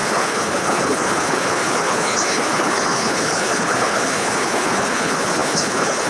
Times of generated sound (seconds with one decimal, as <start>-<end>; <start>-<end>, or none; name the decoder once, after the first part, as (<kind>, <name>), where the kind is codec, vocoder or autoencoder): 0.0-6.1 (codec, HILCodec)